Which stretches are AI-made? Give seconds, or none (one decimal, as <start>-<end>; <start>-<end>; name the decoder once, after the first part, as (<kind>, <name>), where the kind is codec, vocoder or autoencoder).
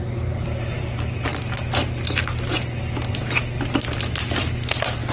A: none